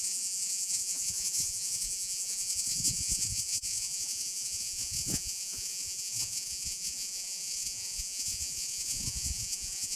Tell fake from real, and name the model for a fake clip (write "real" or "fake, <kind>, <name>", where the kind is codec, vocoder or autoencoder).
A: fake, vocoder, Vocos